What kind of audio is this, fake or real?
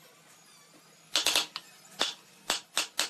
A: real